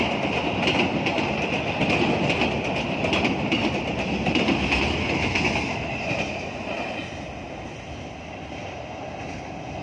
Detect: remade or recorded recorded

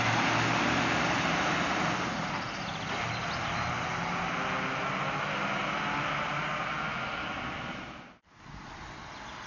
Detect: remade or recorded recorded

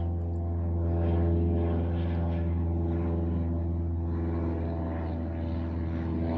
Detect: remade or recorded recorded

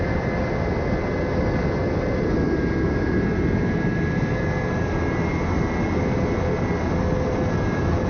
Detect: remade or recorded recorded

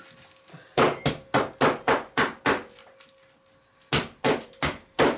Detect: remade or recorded recorded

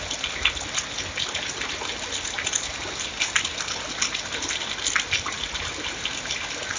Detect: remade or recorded recorded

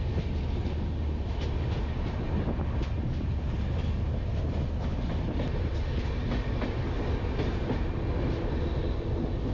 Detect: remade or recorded recorded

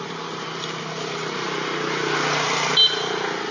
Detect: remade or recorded recorded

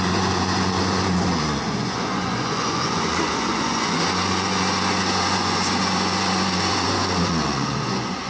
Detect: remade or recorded remade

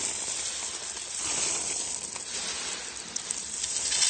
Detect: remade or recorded recorded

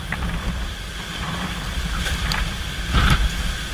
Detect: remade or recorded recorded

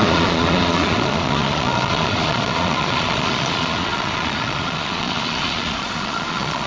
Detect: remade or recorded remade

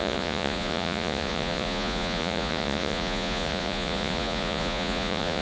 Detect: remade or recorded remade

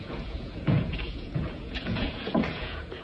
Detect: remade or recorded remade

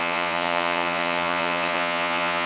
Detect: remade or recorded remade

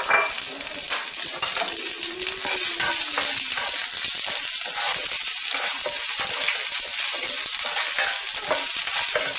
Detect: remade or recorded recorded